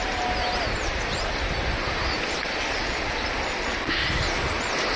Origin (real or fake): real